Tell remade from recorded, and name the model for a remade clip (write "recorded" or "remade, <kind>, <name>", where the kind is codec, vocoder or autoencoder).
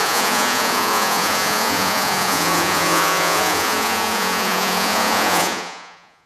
remade, vocoder, Vocos